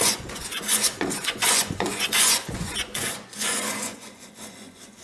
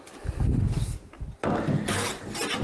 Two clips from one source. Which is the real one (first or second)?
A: second